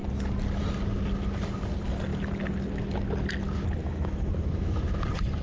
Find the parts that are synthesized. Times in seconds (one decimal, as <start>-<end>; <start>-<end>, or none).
3.8-4.8